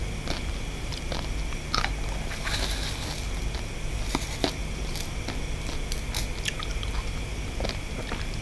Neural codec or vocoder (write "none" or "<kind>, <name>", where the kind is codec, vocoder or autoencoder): none